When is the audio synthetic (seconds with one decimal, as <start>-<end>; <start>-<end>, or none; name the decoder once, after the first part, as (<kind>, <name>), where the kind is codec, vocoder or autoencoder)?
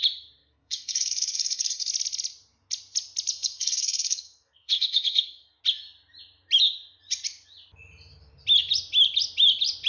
0.4-1.9 (codec, SNAC); 3.3-5.6